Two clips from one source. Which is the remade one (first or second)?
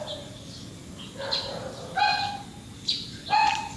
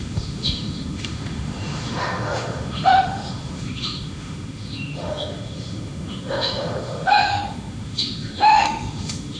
second